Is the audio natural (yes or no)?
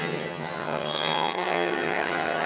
no